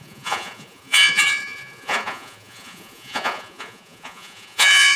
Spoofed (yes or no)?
yes